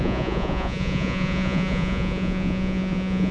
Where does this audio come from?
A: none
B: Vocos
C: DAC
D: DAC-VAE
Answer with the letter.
B